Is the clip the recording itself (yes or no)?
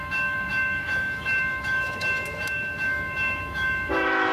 no